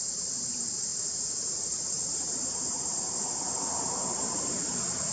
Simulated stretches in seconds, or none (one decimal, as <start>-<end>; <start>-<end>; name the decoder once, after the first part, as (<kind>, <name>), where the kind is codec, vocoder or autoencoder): 0.0-5.1 (vocoder, BigVGAN v2)